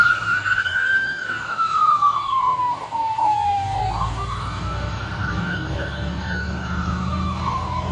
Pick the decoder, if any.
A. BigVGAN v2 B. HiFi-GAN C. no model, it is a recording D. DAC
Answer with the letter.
D